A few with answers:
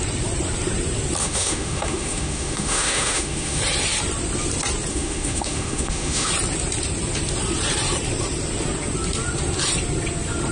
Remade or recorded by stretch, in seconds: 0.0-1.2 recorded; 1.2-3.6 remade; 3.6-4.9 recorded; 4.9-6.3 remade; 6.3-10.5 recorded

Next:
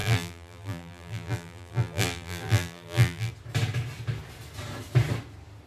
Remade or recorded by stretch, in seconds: 0.0-3.3 remade; 3.3-5.7 recorded

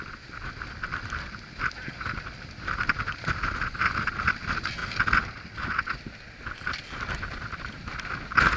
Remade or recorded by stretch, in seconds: 0.0-8.6 recorded

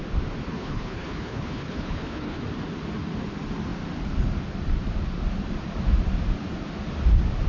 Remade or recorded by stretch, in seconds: 0.0-0.5 recorded; 0.5-2.4 remade; 2.4-7.5 recorded

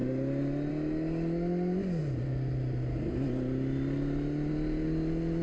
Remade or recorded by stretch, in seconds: 0.0-5.4 recorded

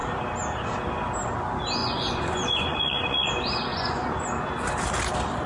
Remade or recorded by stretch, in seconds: 0.0-1.8 recorded; 1.8-3.3 remade; 3.3-3.7 recorded; 3.7-4.2 remade; 4.2-5.5 recorded

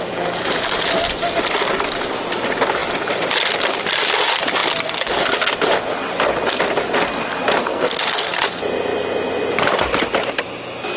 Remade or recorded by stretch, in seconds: 0.0-7.6 recorded; 7.6-8.4 remade; 8.4-11.0 recorded

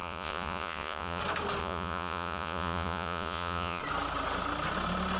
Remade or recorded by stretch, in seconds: 0.0-1.2 remade; 1.2-1.6 recorded; 1.6-3.8 remade; 3.8-5.2 recorded